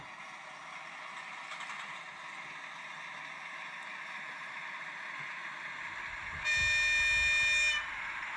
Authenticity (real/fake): real